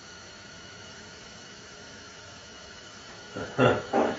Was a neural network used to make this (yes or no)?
yes